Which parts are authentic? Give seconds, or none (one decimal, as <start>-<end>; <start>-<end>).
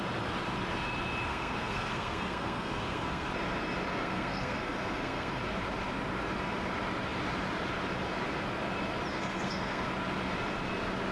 0.0-1.3; 3.3-3.9; 5.4-9.1; 9.9-11.1